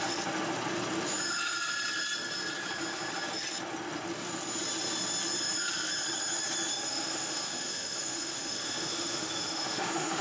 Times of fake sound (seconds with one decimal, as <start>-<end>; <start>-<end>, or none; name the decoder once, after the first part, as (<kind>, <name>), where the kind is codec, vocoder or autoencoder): 6.7-10.2 (autoencoder, DAC-VAE)